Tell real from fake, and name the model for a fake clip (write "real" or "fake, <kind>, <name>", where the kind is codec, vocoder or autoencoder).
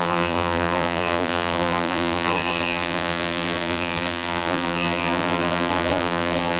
fake, vocoder, BigVGAN v2